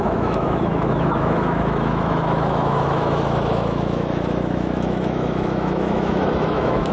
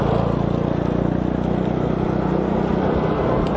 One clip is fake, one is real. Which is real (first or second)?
second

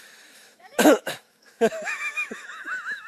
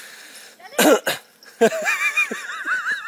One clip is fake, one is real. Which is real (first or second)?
second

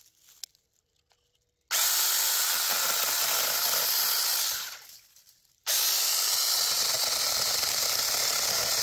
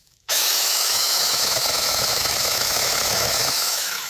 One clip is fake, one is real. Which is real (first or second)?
first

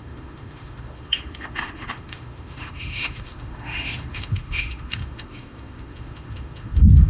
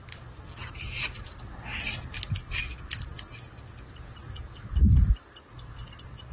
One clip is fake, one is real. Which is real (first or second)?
second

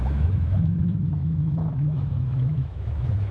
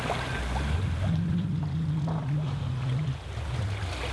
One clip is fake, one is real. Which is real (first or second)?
second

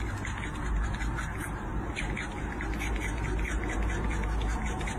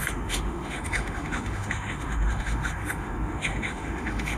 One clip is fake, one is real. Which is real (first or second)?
first